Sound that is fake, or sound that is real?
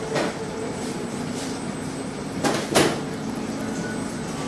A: real